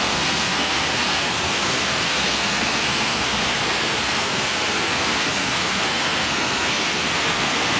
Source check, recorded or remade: remade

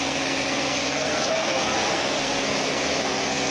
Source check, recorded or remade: remade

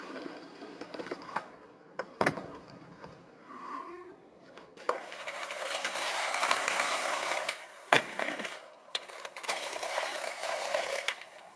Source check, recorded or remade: remade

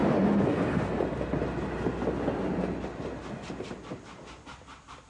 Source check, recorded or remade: recorded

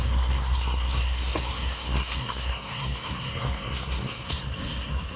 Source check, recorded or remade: remade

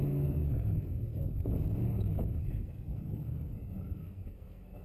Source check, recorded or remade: remade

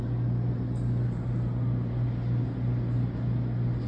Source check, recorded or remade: recorded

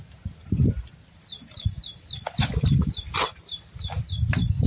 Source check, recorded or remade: recorded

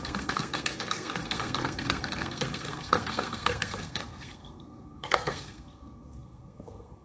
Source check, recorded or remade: remade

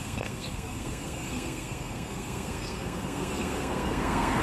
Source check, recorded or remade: remade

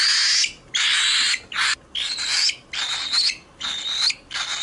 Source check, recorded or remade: recorded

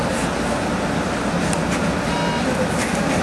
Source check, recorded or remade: recorded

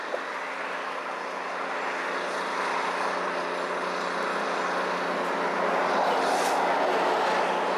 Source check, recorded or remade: recorded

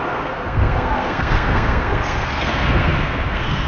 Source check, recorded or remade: remade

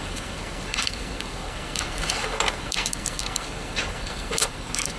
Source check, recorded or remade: remade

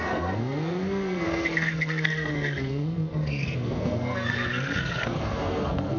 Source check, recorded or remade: remade